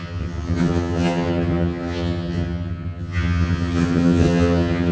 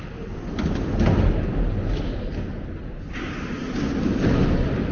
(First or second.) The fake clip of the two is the first